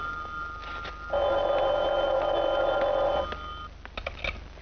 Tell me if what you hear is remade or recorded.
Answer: recorded